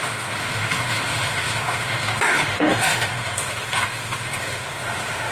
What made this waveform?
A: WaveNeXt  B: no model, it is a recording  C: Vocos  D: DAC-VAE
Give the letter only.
D